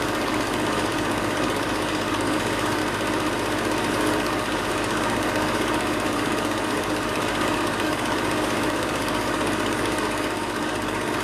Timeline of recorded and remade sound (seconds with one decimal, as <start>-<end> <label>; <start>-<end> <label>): 0.0-2.8 remade; 2.8-3.9 recorded; 3.9-11.2 remade